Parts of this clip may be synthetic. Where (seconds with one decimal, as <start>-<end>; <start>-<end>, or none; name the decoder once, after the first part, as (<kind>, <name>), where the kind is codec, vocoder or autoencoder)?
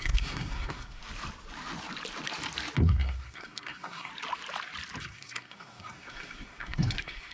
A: 0.0-1.0 (codec, SNAC); 2.8-4.1; 5.0-7.3